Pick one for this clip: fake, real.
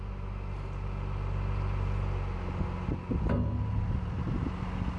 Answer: real